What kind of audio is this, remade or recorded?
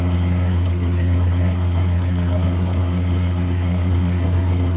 remade